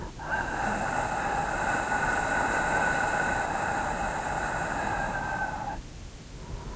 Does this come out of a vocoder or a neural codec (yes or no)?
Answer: no